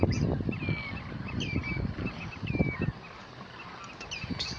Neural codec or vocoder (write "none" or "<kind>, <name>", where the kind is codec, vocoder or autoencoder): none